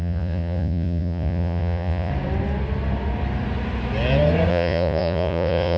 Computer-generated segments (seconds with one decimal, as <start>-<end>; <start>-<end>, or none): 0.0-2.1; 4.5-5.8

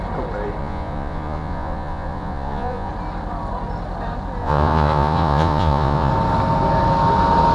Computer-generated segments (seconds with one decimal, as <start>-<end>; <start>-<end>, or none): 0.6-2.9; 4.4-6.1

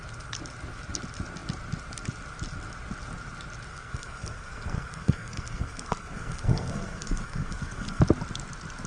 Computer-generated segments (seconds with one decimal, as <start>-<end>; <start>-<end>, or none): 3.7-8.0

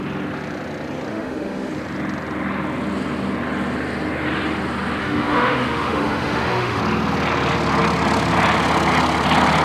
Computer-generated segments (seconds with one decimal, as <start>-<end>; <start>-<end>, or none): 1.1-1.7; 5.0-6.8

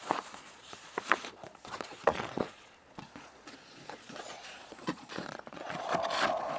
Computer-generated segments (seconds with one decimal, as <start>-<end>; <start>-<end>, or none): 0.0-5.9

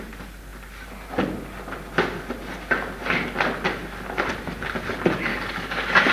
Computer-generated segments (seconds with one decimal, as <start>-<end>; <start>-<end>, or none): 5.3-6.1

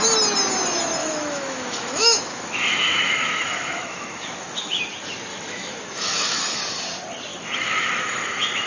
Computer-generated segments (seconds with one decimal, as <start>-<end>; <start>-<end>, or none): 1.0-4.8; 5.3-6.6; 7.3-8.7